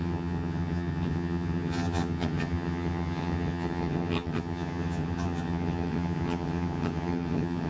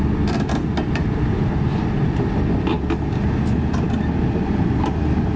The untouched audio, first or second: second